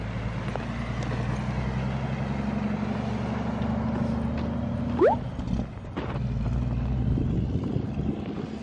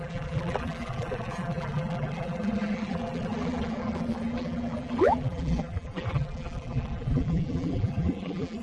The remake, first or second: second